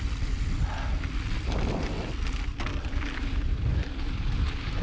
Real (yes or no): yes